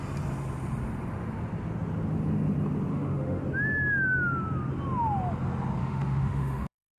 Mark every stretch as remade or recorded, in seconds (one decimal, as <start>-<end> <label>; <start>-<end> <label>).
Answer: 0.0-2.9 recorded; 2.9-3.4 remade; 3.4-5.8 recorded; 5.8-7.0 remade